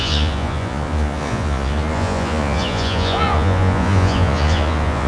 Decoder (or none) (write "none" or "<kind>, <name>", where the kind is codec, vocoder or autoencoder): vocoder, Vocos